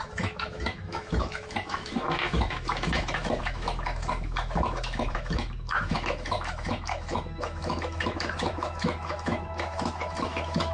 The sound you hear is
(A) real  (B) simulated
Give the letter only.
B